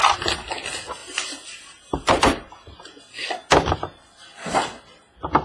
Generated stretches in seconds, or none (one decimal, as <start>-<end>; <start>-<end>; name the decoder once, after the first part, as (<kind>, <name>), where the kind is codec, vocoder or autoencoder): 1.0-3.0 (vocoder, BigVGAN v2)